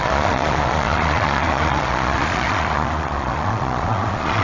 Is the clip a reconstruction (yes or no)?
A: yes